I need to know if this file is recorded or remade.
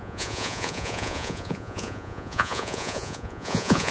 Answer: remade